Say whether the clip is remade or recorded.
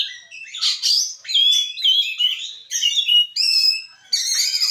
recorded